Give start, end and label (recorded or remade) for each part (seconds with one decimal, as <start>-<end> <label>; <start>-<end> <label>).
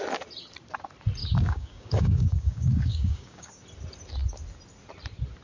0.0-1.2 recorded; 1.2-3.5 remade; 3.5-5.4 recorded